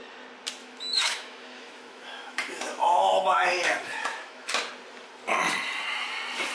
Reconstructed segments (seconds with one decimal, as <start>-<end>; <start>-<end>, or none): 0.6-4.5